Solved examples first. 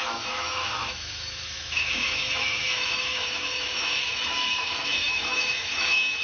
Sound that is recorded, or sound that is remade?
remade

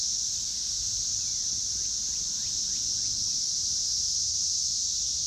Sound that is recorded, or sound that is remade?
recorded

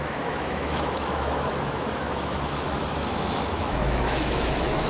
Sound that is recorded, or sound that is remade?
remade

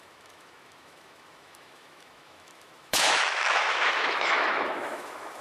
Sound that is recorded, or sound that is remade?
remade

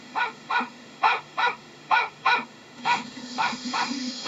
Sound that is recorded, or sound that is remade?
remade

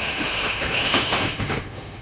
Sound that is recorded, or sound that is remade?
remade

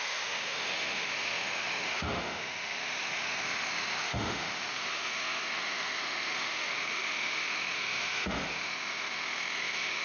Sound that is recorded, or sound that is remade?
remade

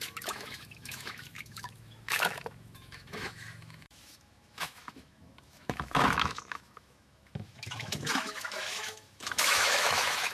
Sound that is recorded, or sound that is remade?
remade